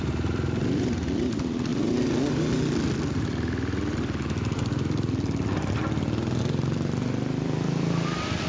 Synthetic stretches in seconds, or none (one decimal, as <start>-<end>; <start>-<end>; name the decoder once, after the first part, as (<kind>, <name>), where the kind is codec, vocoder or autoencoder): 0.0-1.7 (vocoder, BigVGAN v2); 6.4-8.5